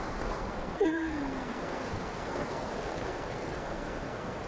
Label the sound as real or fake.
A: fake